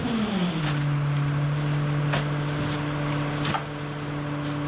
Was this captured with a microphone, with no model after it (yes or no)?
yes